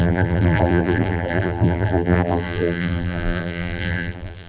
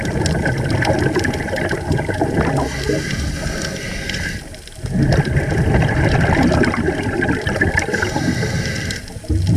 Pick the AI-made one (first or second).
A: first